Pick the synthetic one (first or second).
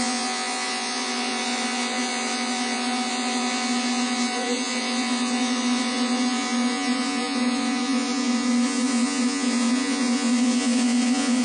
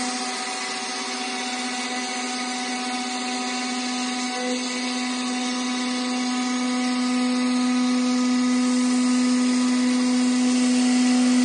first